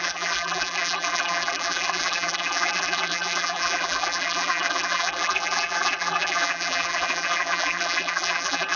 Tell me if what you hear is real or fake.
fake